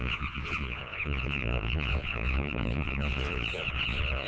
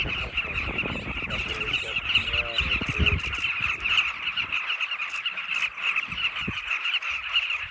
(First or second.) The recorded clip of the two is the second